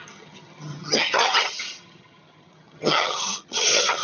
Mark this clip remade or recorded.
remade